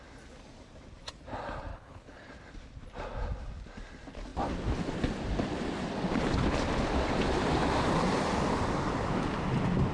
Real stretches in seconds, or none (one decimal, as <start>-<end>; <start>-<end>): 0.0-1.7; 2.3-9.9